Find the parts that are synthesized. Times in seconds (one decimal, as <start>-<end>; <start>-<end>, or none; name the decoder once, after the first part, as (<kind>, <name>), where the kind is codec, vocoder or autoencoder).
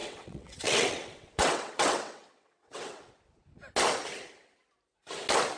0.0-3.1 (vocoder, WaveNeXt)